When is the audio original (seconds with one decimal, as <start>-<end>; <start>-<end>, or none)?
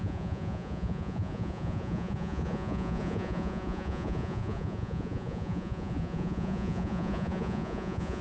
none